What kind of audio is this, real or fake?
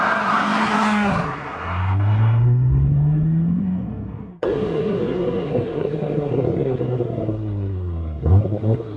fake